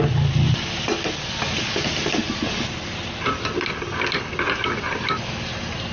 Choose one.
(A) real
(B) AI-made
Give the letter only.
A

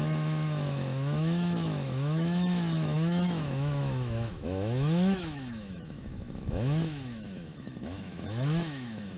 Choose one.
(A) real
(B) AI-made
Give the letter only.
B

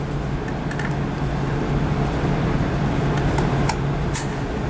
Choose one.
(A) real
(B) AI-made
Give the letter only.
A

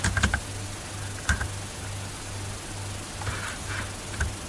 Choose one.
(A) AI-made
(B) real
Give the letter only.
B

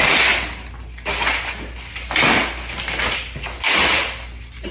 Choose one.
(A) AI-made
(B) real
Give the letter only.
B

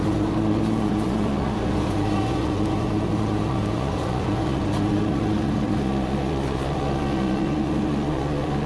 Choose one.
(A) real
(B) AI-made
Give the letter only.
B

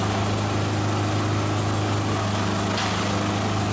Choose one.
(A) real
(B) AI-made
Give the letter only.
A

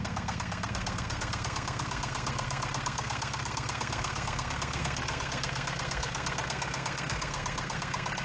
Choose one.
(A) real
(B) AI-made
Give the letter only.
B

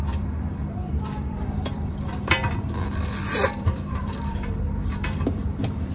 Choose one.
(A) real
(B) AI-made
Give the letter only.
B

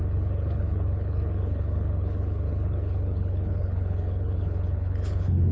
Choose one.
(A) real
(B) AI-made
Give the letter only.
B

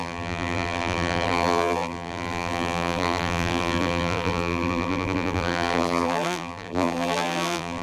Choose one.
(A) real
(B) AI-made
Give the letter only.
B